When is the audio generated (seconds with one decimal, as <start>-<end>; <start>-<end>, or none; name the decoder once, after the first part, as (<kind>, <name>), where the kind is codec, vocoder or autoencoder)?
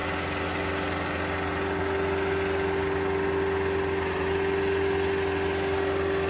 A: none